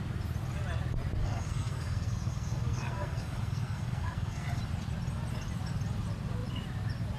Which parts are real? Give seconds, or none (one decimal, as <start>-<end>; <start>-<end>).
0.0-1.2; 4.6-7.2

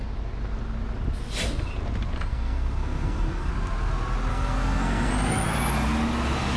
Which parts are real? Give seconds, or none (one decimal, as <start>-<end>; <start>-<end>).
0.0-2.3; 3.5-4.3; 5.1-6.6

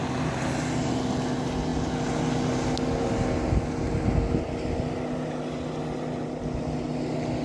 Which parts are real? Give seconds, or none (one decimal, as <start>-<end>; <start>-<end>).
0.0-7.4

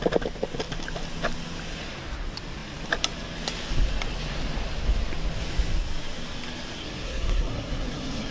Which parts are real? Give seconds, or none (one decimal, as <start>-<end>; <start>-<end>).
0.0-6.8